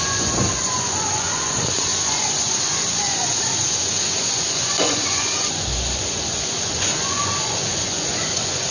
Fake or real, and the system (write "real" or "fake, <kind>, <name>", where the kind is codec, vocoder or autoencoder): fake, vocoder, Vocos